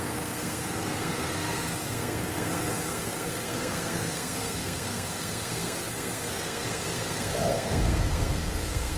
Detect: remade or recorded remade